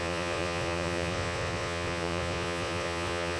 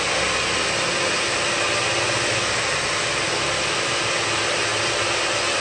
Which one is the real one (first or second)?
second